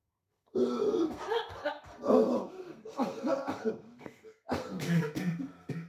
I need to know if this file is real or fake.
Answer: fake